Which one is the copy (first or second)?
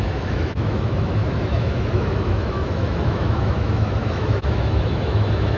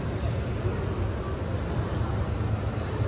first